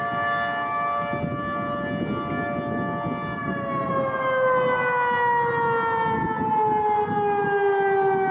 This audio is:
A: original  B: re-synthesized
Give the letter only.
A